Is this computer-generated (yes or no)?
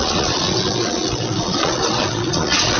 yes